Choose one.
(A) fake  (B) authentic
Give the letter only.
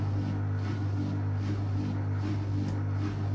B